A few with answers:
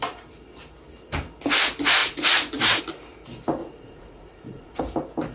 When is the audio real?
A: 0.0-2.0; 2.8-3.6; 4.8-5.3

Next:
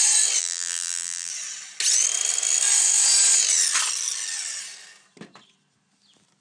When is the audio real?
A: 0.0-0.4; 1.3-6.4

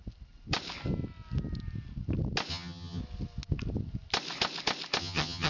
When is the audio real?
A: 0.0-2.5; 3.0-5.0

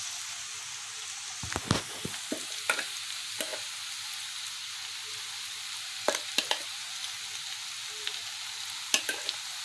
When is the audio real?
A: 0.0-9.6

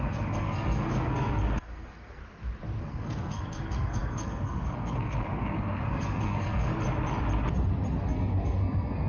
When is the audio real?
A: 2.2-2.8; 6.7-8.0

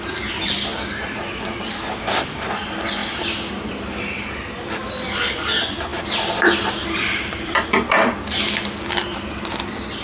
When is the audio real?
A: 0.0-0.7; 2.5-3.0; 3.5-5.9; 8.9-10.0